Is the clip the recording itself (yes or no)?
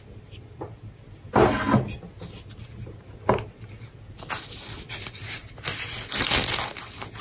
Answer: yes